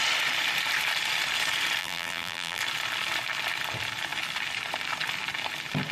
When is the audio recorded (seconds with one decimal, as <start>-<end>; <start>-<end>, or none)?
0.0-1.8; 2.6-5.9